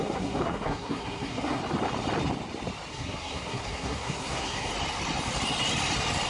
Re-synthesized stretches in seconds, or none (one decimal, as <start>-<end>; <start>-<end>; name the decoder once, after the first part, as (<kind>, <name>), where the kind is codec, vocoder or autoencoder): 0.0-1.6 (codec, SNAC); 2.9-4.7